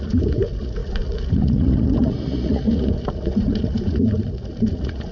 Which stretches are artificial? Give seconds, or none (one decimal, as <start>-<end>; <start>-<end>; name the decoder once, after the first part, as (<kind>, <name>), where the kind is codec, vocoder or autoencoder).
0.0-5.1 (vocoder, Vocos)